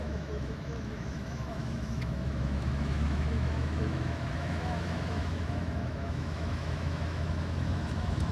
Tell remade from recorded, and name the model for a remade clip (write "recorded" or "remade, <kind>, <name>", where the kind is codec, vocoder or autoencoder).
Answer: remade, autoencoder, DAC-VAE